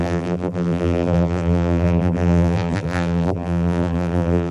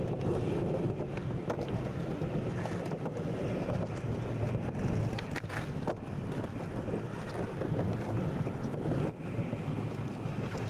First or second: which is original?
second